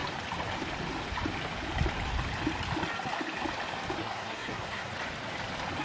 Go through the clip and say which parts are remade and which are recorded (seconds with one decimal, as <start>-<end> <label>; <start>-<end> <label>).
0.0-4.0 recorded; 4.0-4.9 remade; 4.9-5.8 recorded